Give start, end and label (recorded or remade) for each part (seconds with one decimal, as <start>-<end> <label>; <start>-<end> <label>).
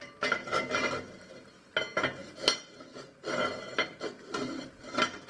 0.0-5.3 recorded